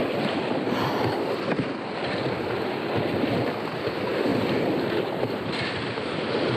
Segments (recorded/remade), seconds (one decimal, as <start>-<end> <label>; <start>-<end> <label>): 0.0-6.6 recorded